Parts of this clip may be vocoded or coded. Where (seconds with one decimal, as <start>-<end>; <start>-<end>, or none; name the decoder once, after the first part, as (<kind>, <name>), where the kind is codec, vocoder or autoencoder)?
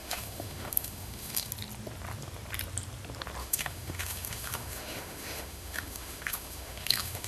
0.0-1.5 (autoencoder, DAC-VAE); 3.4-7.3